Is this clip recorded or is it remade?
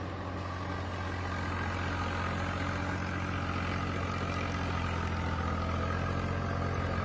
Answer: recorded